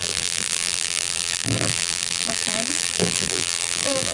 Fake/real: fake